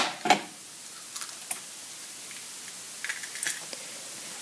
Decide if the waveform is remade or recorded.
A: recorded